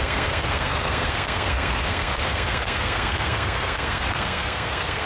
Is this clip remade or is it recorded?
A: remade